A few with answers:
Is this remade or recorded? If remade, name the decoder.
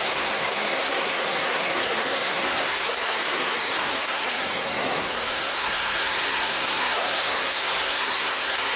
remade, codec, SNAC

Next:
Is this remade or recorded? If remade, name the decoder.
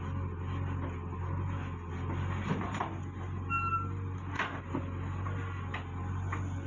recorded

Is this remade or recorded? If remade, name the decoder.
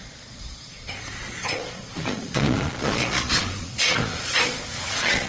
remade, vocoder, Vocos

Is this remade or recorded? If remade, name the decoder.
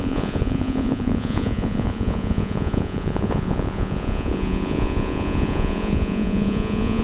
remade, vocoder, Vocos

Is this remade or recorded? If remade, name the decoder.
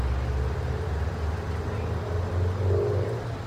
recorded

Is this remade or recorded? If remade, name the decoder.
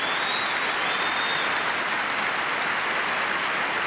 recorded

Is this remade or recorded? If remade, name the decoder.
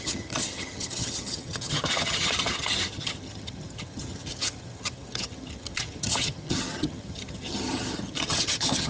remade, vocoder, HiFi-GAN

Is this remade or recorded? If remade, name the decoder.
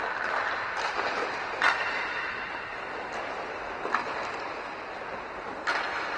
recorded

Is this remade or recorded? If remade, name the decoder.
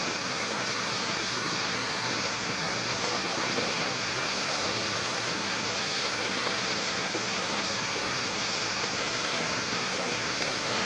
remade, codec, SNAC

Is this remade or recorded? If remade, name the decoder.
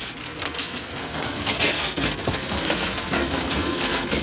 remade, codec, SNAC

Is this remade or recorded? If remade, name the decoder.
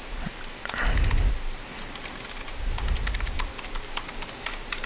recorded